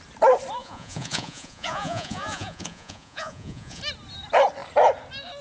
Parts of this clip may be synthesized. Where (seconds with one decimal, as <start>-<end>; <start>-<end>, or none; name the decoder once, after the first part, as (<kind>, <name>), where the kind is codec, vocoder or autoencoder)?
0.6-3.8 (vocoder, Vocos)